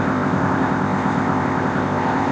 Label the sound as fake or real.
fake